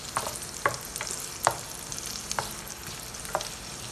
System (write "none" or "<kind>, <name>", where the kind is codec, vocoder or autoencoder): none